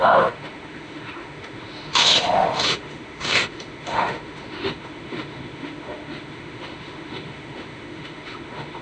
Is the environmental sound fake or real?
fake